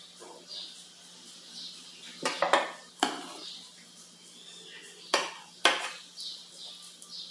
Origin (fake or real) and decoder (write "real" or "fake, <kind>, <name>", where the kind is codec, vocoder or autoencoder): real